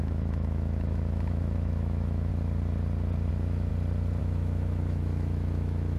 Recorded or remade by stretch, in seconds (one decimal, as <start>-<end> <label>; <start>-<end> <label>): 0.0-2.3 remade; 2.3-3.3 recorded; 3.3-3.7 remade; 3.7-4.2 recorded; 4.2-6.0 remade